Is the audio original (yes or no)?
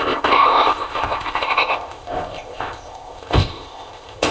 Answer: no